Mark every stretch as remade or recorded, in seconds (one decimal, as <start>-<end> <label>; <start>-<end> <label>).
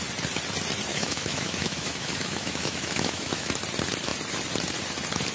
0.0-0.9 recorded; 0.9-3.5 remade; 3.5-5.3 recorded